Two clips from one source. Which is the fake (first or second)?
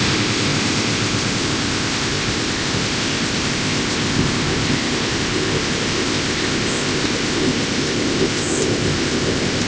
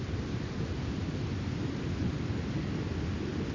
first